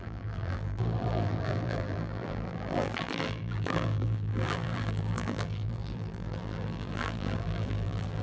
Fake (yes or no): yes